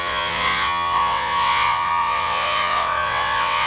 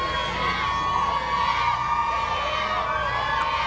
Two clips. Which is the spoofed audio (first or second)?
first